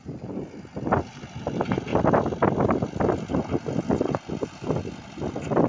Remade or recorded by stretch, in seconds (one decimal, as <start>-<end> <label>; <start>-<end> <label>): 0.0-5.7 recorded